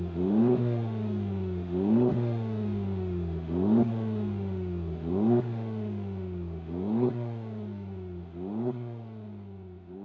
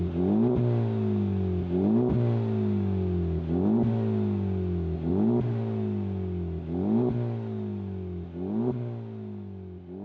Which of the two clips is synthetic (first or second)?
first